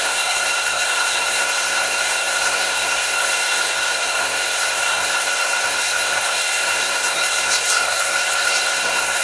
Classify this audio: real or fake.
fake